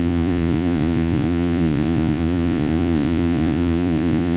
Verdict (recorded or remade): remade